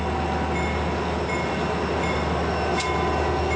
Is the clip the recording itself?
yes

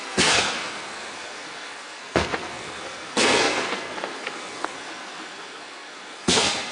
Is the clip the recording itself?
no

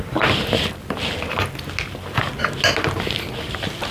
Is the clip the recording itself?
yes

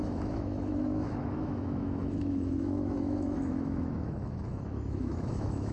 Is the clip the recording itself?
no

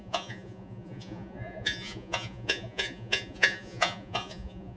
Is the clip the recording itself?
no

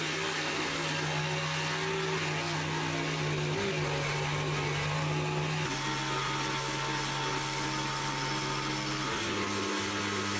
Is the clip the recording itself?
yes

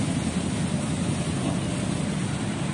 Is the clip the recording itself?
yes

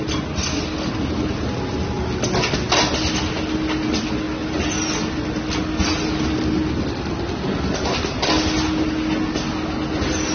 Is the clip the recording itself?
yes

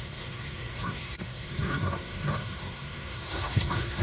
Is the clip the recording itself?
no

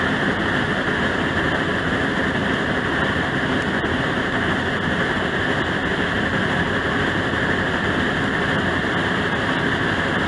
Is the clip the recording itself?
yes